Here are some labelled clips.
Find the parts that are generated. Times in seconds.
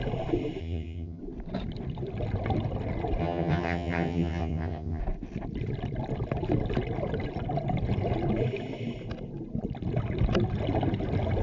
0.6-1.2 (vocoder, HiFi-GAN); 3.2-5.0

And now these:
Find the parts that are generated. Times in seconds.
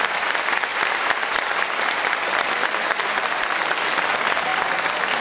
0.7-3.6 (vocoder, BigVGAN v2)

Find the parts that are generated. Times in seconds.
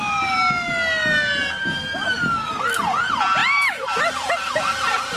3.4-5.2 (vocoder, BigVGAN v2)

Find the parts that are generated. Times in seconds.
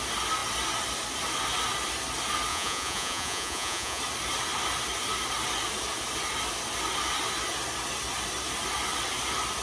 2.5-4.0 (vocoder, Vocos)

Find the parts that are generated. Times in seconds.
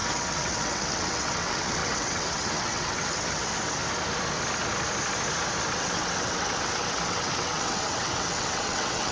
0.0-3.5 (vocoder, WaveNeXt); 5.8-9.1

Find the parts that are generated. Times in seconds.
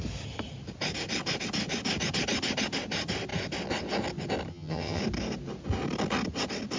4.5-5.0 (vocoder, HiFi-GAN)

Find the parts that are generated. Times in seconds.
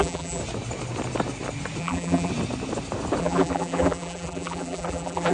0.0-0.4 (vocoder, BigVGAN v2); 1.8-2.3; 3.2-5.3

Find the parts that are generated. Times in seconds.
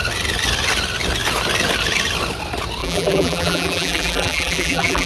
2.8-5.1 (vocoder, BigVGAN v2)